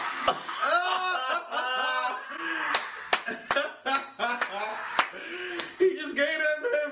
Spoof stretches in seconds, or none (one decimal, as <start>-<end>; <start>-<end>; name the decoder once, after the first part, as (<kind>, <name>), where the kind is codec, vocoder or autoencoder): 4.7-5.6 (codec, DAC)